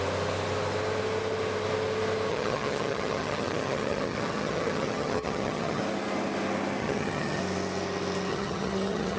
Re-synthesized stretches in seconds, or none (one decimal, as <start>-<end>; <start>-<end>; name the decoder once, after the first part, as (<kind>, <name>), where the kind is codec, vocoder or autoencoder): 2.3-5.8 (vocoder, HiFi-GAN); 6.8-7.4; 8.3-9.2